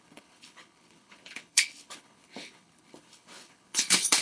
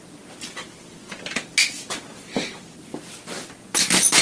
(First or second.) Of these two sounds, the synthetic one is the first